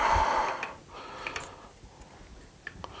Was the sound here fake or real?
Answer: real